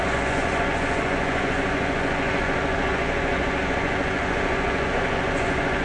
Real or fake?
fake